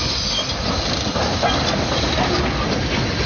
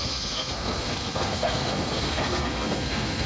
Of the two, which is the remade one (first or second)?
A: second